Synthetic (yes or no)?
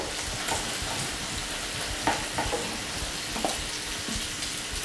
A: no